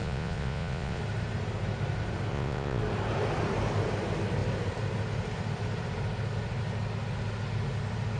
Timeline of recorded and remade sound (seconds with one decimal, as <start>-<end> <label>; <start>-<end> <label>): 0.0-1.0 remade; 1.0-2.3 recorded; 2.3-2.8 remade; 2.8-8.2 recorded